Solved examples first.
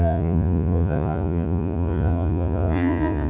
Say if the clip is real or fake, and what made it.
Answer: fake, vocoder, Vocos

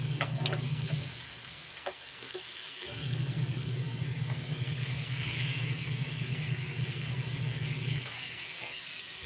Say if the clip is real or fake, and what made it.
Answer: fake, codec, SNAC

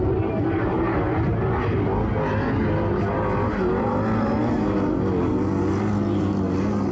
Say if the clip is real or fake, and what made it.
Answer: real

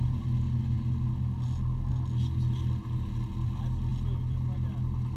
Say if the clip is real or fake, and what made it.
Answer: real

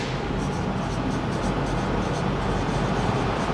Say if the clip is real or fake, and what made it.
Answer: real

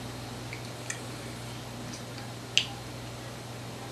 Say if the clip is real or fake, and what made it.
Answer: real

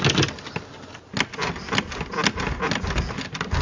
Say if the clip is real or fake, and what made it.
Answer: real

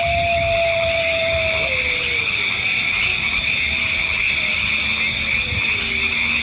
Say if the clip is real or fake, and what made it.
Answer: real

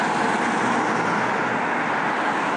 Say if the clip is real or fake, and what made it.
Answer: real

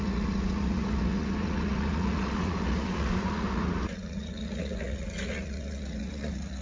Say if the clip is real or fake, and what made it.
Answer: fake, vocoder, Vocos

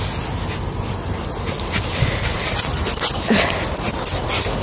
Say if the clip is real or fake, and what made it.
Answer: real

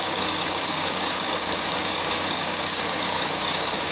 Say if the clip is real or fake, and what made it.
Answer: fake, codec, DAC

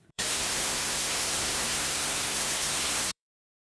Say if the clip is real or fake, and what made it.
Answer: fake, codec, SNAC